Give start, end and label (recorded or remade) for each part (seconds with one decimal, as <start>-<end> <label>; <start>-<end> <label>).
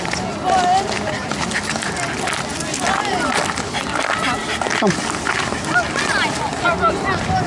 0.0-7.5 recorded